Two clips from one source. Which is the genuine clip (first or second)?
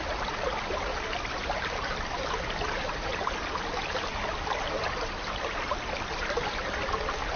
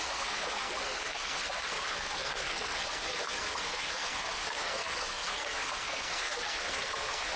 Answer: first